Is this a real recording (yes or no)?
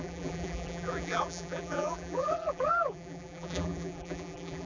no